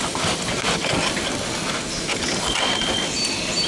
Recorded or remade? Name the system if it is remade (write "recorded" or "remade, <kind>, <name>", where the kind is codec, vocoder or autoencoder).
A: recorded